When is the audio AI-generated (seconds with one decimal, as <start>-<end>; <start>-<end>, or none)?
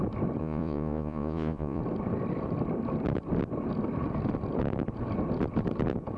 0.4-1.8